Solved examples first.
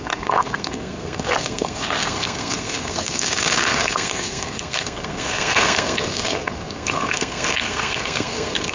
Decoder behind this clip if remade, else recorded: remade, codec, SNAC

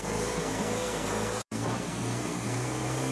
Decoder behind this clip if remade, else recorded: remade, codec, SNAC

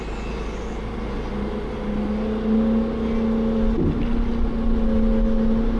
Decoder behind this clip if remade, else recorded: recorded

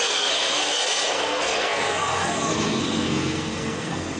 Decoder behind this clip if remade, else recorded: remade, codec, SNAC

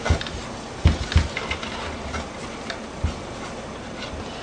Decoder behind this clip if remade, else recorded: recorded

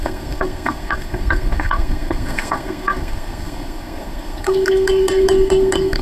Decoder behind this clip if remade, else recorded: remade, codec, SNAC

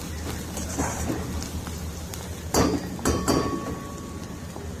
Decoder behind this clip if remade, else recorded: recorded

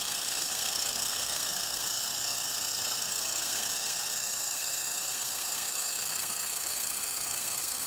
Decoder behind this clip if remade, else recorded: remade, codec, SNAC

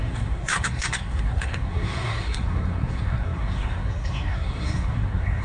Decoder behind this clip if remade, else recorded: remade, codec, SNAC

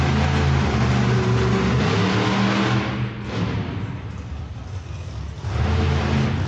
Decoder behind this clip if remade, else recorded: recorded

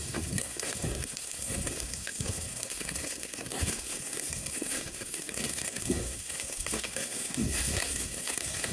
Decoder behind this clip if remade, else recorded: remade, codec, SNAC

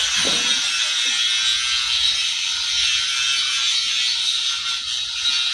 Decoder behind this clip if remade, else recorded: recorded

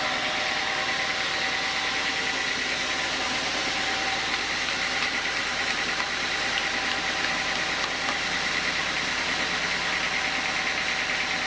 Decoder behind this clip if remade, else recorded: recorded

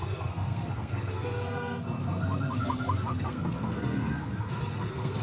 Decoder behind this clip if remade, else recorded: remade, codec, SNAC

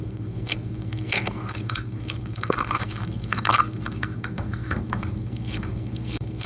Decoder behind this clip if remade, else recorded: remade, codec, SNAC